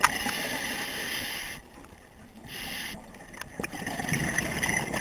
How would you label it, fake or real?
real